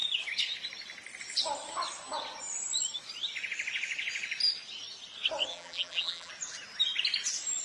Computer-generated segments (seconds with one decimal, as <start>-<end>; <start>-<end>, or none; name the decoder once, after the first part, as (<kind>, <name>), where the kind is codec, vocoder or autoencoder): 5.5-6.3 (vocoder, BigVGAN v2)